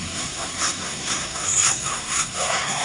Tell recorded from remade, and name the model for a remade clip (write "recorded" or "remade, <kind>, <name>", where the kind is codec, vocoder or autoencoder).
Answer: remade, codec, SNAC